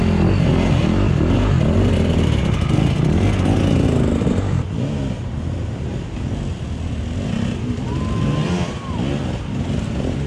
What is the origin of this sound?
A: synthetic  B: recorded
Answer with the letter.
B